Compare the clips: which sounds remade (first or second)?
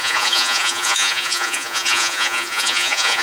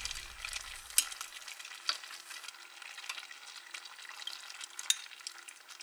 first